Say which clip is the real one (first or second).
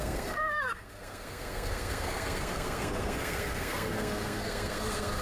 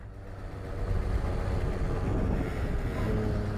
second